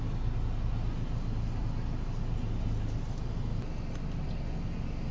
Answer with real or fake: real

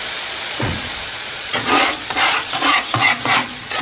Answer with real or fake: fake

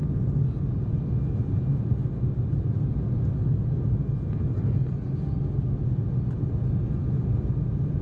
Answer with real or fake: real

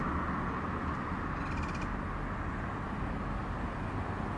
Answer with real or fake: real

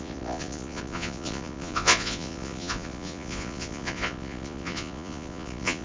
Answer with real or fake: fake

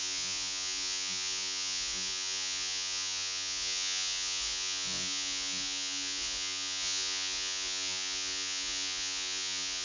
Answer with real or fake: fake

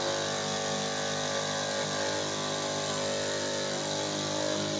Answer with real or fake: real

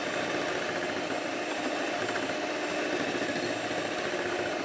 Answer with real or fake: real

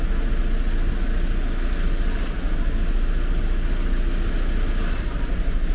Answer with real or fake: real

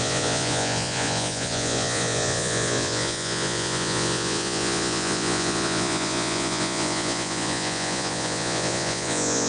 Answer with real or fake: fake